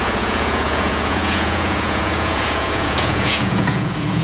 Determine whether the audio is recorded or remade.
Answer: remade